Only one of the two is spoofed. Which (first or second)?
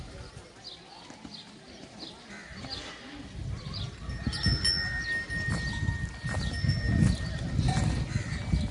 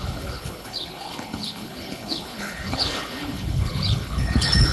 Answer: second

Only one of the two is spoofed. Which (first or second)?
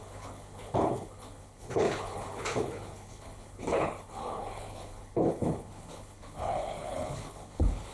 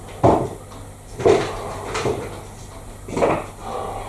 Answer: first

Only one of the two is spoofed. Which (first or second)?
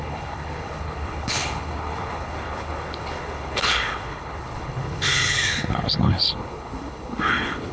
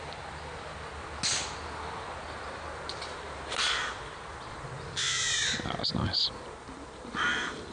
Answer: first